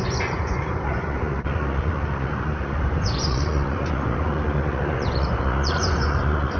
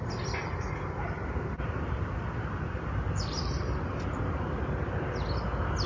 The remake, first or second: first